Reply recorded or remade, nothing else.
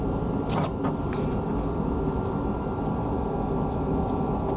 recorded